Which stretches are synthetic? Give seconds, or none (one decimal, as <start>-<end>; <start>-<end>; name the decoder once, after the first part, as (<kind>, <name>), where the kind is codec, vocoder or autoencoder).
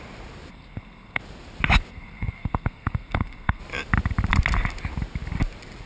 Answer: 0.5-1.2 (codec, SNAC); 1.9-3.6